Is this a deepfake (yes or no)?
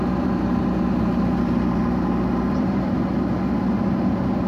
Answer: no